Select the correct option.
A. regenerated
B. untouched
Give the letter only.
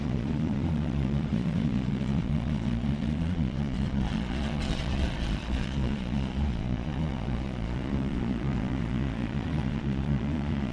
A